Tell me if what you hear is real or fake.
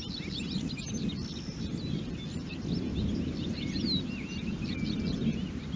real